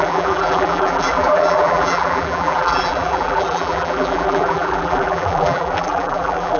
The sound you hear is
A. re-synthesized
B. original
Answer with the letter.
A